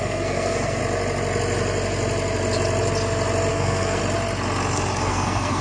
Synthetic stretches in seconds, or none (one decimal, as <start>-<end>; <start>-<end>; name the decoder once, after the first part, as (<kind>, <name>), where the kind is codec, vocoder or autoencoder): 0.0-0.8 (codec, SNAC); 3.5-4.0; 5.0-5.6